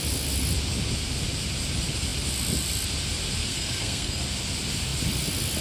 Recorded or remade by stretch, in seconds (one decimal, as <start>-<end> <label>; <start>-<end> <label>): 0.0-3.4 recorded; 3.4-4.2 remade; 4.2-5.6 recorded